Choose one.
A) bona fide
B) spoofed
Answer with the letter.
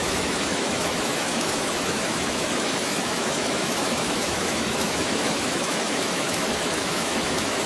B